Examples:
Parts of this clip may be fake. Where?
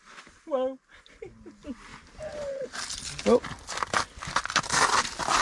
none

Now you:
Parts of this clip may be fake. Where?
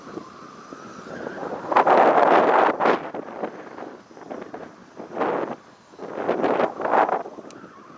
0.0-1.4 (vocoder, BigVGAN v2); 3.0-8.0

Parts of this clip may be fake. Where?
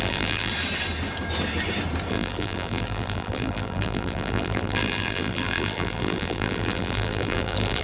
0.0-0.5 (vocoder, BigVGAN v2); 2.1-7.8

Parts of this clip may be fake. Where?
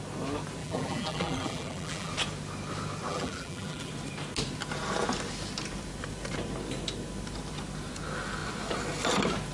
0.6-2.1 (vocoder, BigVGAN v2); 3.1-3.9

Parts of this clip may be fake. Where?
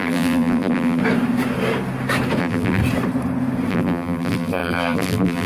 0.0-1.0 (vocoder, BigVGAN v2); 2.4-2.8; 3.7-5.5